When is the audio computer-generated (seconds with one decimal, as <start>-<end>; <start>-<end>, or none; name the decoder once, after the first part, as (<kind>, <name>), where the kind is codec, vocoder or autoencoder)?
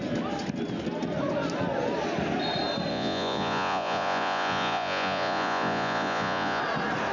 2.9-6.6 (vocoder, Vocos)